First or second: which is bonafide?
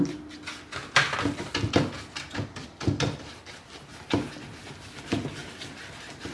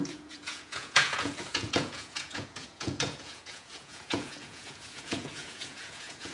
first